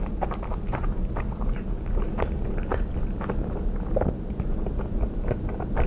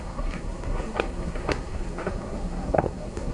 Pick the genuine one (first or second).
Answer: first